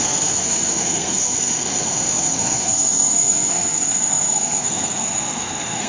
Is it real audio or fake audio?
fake